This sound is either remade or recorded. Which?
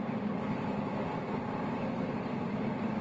recorded